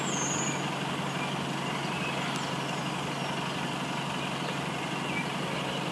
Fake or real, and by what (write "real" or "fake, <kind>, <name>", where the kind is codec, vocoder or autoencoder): real